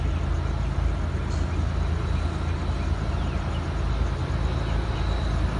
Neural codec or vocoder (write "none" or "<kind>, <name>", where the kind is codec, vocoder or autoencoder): none